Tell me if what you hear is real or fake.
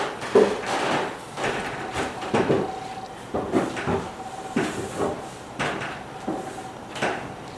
real